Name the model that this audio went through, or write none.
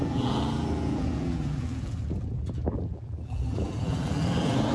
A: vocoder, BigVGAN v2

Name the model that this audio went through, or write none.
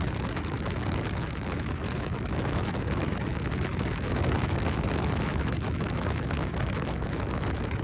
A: autoencoder, DAC-VAE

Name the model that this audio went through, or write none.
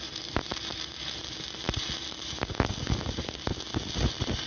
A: none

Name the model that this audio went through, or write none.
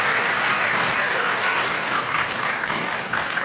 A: codec, DAC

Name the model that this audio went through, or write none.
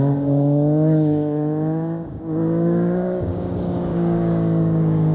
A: codec, DAC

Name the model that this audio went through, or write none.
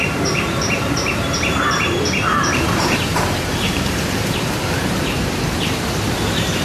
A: vocoder, BigVGAN v2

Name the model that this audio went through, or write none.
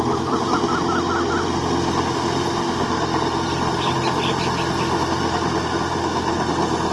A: none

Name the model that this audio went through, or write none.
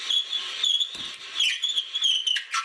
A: none